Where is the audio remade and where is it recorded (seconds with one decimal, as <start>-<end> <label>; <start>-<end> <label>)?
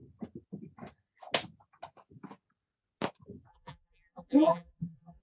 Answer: 0.0-3.5 recorded; 3.5-5.2 remade